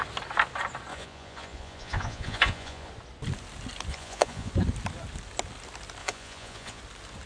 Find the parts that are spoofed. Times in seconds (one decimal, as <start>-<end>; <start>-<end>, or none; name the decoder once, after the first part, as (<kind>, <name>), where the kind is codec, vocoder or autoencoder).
0.9-2.9 (vocoder, Vocos); 3.9-4.5; 6.0-6.8